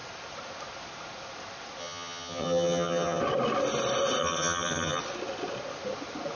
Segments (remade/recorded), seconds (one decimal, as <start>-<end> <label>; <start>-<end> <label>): 0.0-1.8 recorded; 1.8-3.2 remade; 3.2-4.2 recorded; 4.2-5.0 remade; 5.0-6.4 recorded